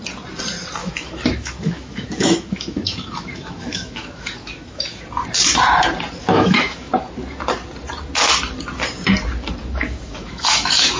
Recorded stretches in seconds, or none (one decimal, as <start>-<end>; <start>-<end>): 0.0-0.8; 5.0-6.2; 6.9-9.6